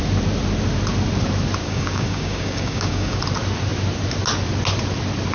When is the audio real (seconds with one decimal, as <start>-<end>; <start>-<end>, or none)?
0.0-1.6; 3.2-5.3

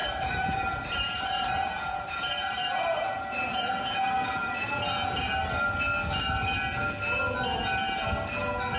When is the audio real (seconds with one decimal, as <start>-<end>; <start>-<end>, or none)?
3.7-8.8

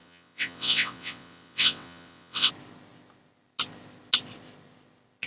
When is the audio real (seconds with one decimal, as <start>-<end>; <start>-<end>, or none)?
2.5-5.3

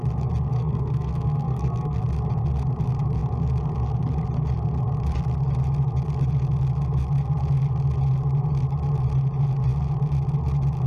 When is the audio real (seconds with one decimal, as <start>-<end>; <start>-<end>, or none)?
0.0-0.5; 2.0-10.9

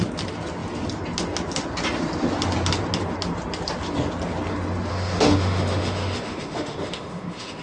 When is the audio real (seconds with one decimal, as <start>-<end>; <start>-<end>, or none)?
0.0-4.9

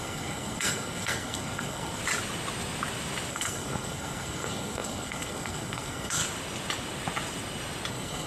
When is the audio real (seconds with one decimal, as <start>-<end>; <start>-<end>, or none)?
2.0-3.3; 6.2-7.9